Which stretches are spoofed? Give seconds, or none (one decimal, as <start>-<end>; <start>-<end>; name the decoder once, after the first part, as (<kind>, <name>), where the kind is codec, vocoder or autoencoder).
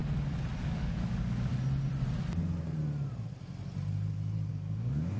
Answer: 0.6-1.5 (codec, DAC); 4.5-5.2